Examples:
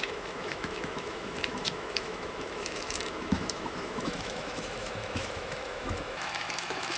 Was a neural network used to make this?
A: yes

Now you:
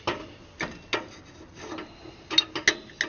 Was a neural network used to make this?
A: no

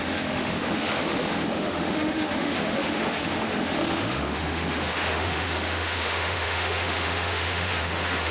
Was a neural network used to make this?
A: yes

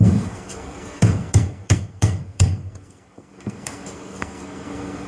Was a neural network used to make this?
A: yes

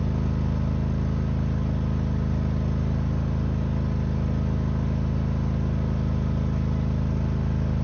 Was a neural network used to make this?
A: no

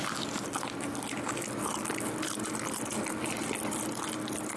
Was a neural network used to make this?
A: no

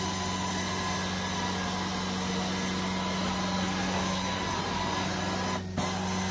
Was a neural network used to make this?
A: no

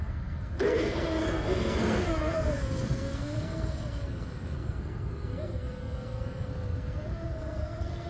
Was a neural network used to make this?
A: yes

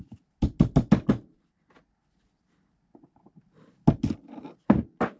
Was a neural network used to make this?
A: no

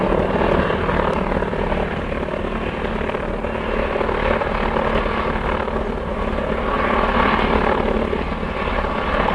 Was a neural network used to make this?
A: no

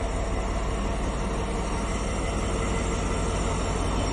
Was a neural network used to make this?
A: no